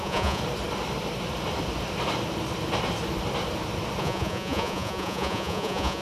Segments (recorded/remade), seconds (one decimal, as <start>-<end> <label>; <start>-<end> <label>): 0.0-0.4 remade; 0.4-4.0 recorded; 4.0-6.0 remade